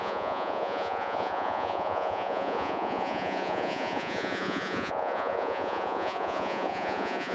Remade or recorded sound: remade